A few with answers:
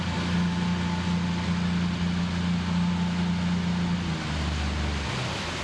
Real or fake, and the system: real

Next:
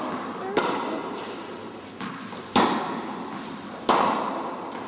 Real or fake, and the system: real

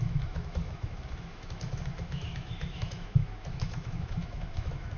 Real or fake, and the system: fake, autoencoder, DAC-VAE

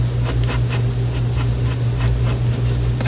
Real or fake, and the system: real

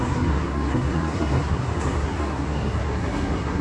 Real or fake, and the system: fake, codec, SNAC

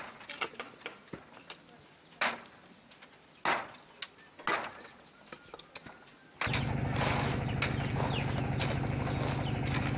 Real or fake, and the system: real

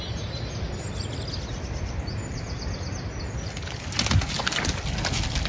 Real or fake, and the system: real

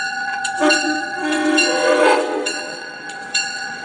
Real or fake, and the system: fake, vocoder, WaveNeXt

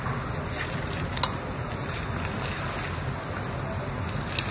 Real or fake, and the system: real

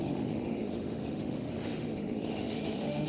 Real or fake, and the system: fake, autoencoder, DAC-VAE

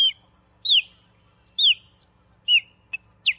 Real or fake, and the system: real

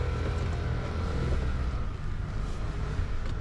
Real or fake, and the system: real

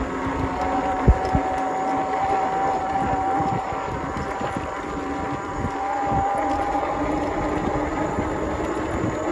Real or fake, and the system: real